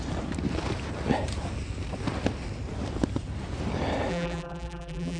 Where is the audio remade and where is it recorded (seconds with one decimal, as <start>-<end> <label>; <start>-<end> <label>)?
0.0-4.1 recorded; 4.1-5.2 remade